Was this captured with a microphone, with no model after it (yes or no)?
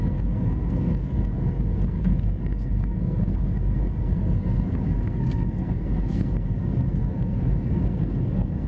no